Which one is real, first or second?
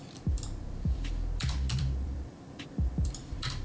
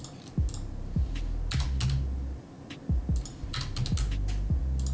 second